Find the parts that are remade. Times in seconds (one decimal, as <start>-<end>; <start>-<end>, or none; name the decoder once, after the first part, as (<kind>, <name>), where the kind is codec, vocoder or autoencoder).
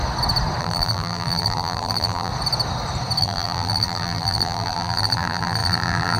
0.6-2.3 (vocoder, BigVGAN v2); 3.2-6.2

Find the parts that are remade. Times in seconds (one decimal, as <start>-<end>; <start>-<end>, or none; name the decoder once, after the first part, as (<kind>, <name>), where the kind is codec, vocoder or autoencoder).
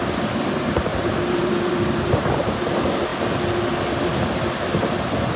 0.9-2.1 (vocoder, BigVGAN v2)